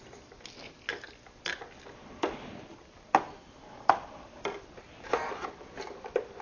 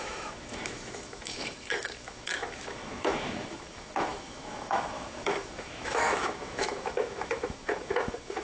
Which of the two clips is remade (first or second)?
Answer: second